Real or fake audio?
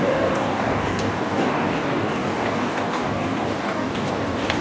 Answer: fake